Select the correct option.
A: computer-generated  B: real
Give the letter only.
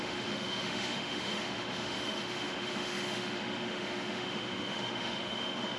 A